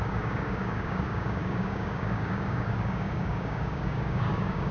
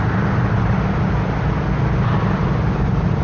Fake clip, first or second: first